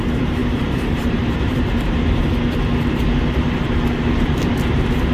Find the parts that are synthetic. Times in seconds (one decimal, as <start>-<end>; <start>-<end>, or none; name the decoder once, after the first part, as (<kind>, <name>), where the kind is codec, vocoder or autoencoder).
0.4-2.2 (vocoder, BigVGAN v2)